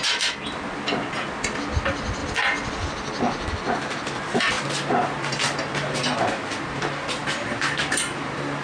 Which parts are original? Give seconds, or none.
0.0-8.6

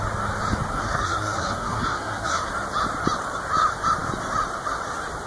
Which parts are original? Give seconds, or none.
0.0-0.7; 2.5-5.3